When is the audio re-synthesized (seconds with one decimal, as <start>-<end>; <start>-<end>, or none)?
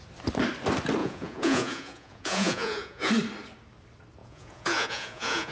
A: 1.0-3.1; 4.2-5.5